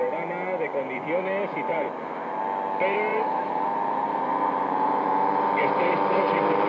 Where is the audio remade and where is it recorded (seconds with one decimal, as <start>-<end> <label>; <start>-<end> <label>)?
0.0-1.7 recorded; 1.7-2.4 remade; 2.4-3.1 recorded; 3.1-6.2 remade; 6.2-6.7 recorded